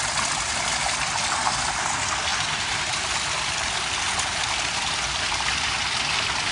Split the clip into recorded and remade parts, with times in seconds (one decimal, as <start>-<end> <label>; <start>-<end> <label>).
0.0-6.5 recorded